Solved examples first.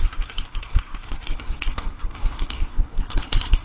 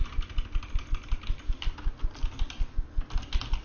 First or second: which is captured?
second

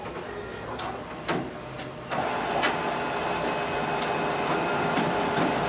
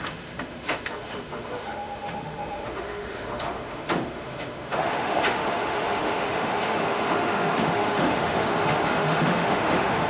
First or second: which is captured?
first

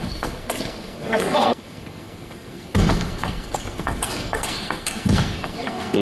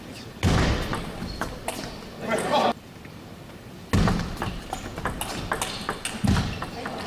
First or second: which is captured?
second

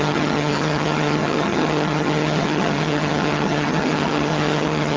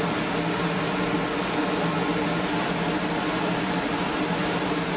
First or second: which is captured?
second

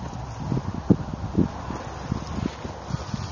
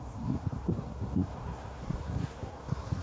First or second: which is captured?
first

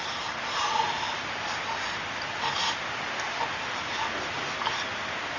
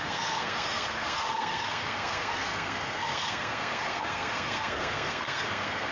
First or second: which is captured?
first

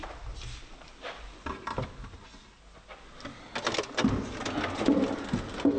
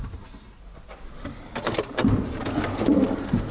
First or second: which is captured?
first